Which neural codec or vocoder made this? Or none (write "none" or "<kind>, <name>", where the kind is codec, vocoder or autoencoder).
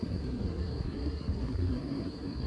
codec, SNAC